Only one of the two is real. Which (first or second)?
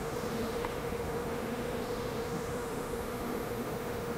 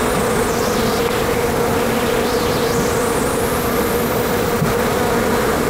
second